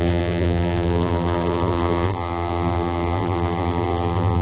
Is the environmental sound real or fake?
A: fake